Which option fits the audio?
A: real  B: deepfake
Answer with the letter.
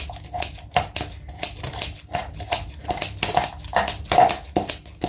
A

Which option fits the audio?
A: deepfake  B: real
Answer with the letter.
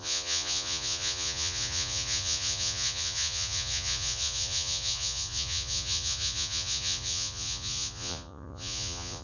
A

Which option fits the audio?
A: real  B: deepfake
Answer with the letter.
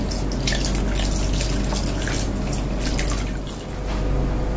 A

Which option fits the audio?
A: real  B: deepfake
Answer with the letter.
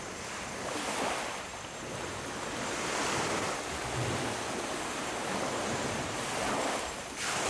A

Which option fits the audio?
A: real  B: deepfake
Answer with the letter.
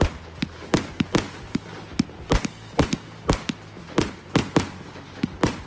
A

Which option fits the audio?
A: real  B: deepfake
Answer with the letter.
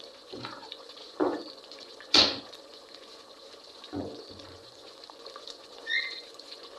B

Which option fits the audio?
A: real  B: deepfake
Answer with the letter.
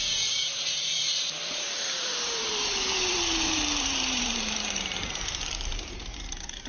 B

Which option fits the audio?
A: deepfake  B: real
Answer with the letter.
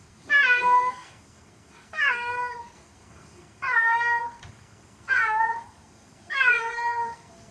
A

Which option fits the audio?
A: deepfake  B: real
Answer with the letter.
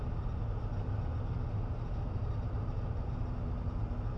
B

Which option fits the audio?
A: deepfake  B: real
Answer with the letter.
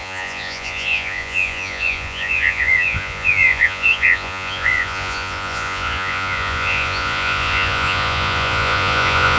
A